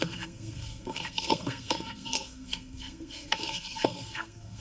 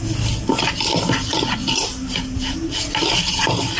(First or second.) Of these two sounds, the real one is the second